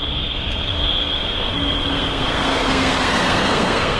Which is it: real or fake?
fake